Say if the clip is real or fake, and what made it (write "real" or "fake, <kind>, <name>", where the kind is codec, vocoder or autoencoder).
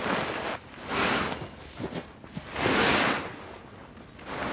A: real